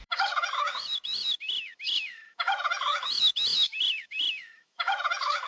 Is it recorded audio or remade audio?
remade